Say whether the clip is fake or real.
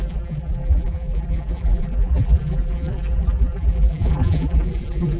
fake